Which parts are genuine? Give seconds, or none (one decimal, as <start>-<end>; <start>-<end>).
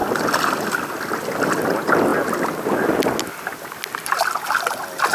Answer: 0.0-5.1